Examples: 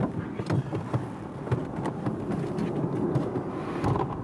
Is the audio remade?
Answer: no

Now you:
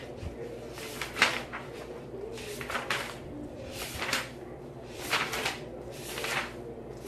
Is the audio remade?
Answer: yes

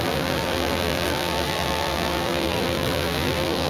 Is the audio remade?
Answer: yes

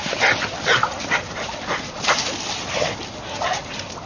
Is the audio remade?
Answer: no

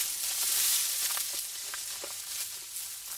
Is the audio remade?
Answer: no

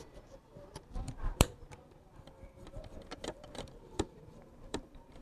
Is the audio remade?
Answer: yes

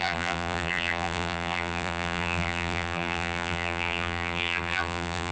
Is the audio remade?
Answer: yes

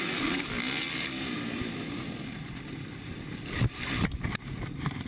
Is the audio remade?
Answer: yes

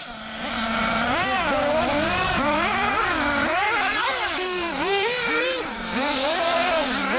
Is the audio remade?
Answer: yes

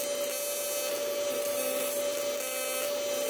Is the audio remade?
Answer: no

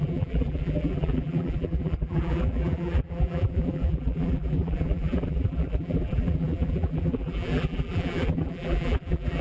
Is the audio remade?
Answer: yes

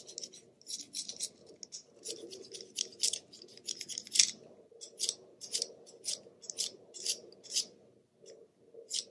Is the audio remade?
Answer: no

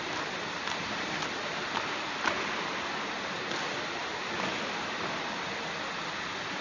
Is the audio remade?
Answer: no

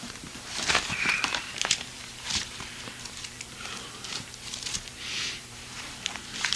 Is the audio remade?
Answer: yes